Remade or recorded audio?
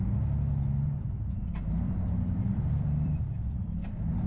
remade